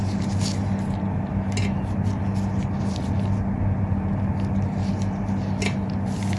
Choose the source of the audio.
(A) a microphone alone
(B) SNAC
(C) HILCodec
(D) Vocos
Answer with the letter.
A